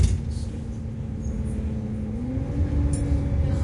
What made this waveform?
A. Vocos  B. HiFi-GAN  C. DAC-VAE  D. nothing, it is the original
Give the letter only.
D